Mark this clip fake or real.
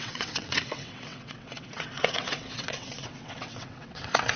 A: fake